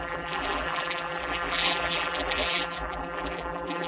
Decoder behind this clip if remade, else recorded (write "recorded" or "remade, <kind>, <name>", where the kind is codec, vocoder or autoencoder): remade, vocoder, BigVGAN v2